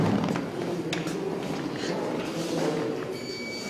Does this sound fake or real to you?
real